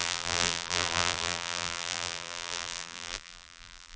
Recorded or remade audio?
remade